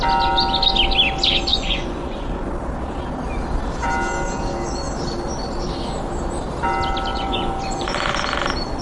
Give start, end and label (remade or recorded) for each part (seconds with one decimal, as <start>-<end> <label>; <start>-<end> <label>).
0.0-1.5 recorded; 1.5-2.5 remade; 2.5-7.1 recorded; 7.1-8.1 remade; 8.1-8.8 recorded